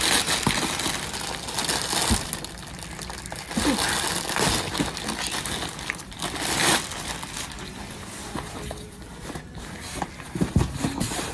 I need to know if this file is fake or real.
real